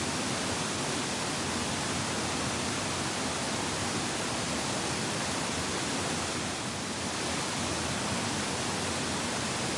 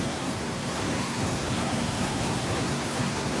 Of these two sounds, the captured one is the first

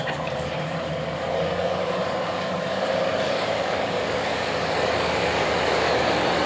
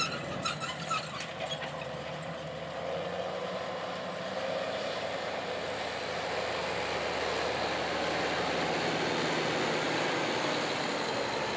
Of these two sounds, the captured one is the second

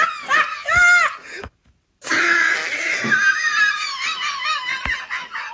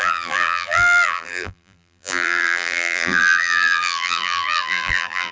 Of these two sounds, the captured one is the first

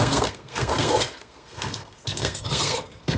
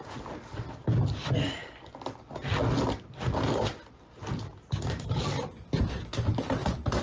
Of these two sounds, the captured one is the second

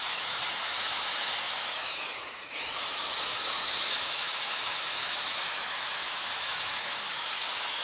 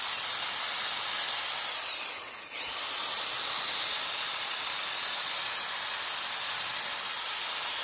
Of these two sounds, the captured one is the second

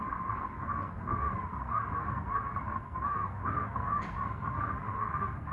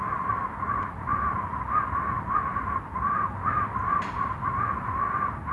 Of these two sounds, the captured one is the second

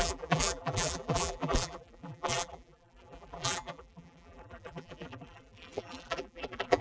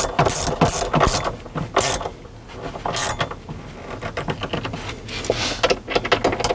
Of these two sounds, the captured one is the second